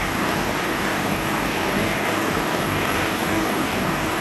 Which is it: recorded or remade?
remade